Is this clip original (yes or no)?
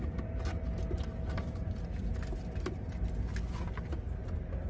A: yes